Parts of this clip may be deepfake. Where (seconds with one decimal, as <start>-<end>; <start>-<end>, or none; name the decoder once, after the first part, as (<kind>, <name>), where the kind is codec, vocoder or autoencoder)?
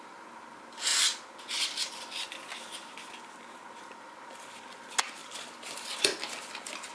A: 5.2-6.0 (vocoder, BigVGAN v2)